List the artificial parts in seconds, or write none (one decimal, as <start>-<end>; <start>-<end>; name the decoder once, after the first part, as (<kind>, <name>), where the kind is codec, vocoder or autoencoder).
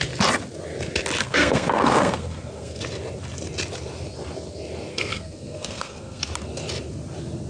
1.2-2.8 (codec, SNAC); 4.9-6.2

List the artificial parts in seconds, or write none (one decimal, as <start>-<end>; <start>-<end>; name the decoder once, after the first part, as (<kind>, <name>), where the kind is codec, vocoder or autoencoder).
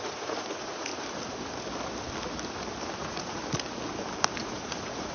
0.0-0.9 (vocoder, Vocos); 3.0-3.4; 4.4-5.1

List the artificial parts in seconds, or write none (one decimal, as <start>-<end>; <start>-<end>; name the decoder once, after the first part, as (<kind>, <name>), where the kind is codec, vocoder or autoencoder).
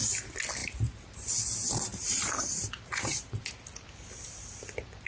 0.6-1.2 (vocoder, BigVGAN v2); 1.9-3.4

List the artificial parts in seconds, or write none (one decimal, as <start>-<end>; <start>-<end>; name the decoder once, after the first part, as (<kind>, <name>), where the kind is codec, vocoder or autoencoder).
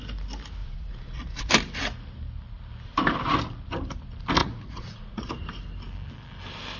0.6-1.5 (vocoder, Vocos); 4.4-5.3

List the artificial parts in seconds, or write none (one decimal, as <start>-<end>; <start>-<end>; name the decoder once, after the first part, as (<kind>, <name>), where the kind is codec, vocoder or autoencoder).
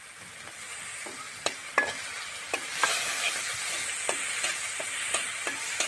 3.5-4.7 (vocoder, BigVGAN v2)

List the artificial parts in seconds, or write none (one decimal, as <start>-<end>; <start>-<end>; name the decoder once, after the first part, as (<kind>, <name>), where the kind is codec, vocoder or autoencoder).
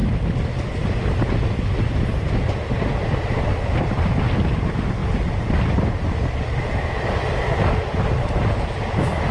none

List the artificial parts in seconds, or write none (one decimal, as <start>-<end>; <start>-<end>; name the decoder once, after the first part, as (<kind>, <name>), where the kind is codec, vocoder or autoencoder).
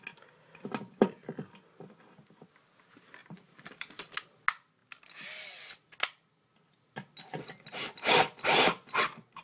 3.2-4.1 (vocoder, BigVGAN v2)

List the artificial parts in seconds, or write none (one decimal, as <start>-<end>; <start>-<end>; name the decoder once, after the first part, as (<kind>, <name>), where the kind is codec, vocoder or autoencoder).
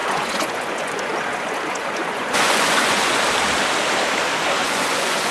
0.0-3.2 (vocoder, Vocos); 4.6-5.3